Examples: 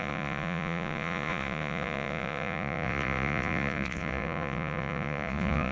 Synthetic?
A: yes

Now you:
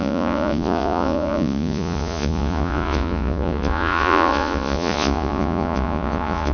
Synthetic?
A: yes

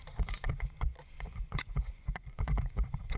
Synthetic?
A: yes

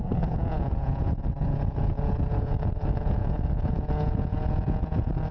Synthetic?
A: yes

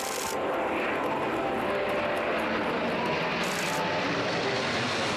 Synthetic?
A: no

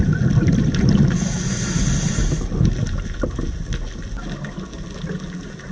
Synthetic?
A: no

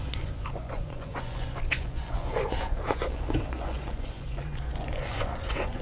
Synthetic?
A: yes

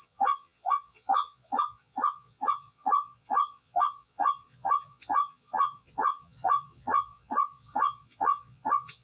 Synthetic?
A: yes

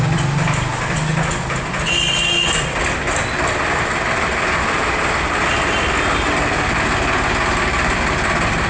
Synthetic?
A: no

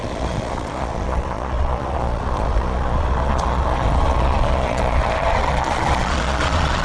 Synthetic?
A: yes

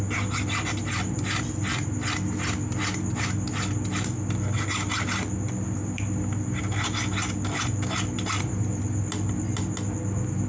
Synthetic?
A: no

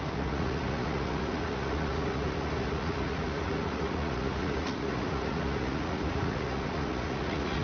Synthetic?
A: yes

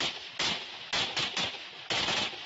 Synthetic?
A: no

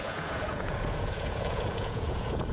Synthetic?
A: yes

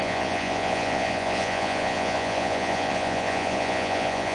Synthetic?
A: yes